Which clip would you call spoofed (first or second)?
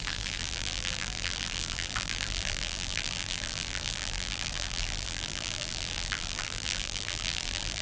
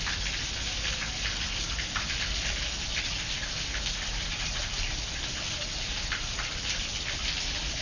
first